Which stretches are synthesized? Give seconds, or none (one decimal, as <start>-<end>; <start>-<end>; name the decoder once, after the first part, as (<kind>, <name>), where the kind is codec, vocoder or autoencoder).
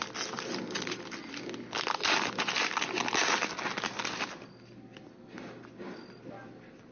none